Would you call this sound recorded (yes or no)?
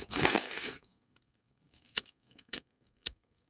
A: no